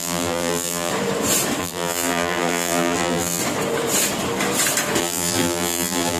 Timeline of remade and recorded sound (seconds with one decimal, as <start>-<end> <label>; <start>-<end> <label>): 0.0-0.9 remade; 0.9-1.6 recorded; 1.6-3.4 remade; 3.4-5.0 recorded; 5.0-6.2 remade